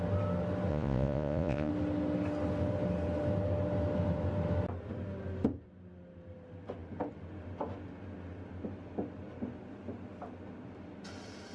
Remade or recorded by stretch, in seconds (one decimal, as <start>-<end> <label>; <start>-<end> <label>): 0.0-0.7 recorded; 0.7-1.7 remade; 1.7-11.5 recorded